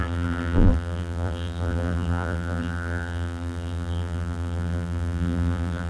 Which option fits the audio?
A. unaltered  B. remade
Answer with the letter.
B